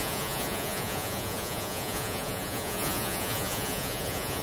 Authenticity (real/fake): fake